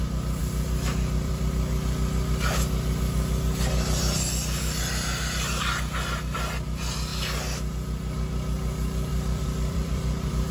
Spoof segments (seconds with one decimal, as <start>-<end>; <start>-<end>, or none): 0.4-1.5; 9.1-10.5